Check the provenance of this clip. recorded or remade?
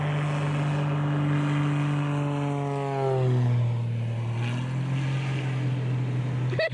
recorded